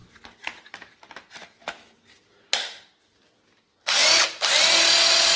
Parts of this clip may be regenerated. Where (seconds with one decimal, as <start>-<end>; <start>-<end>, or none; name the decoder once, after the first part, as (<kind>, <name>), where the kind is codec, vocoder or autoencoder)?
none